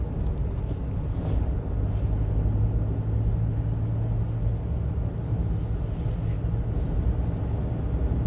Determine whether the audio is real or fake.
real